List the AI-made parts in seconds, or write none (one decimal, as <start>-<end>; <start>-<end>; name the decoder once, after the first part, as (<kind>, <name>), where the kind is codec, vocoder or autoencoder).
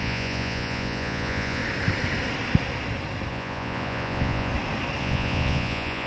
0.0-1.6 (vocoder, Vocos); 3.3-4.5; 5.0-6.1